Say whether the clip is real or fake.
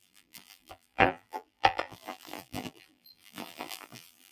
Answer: fake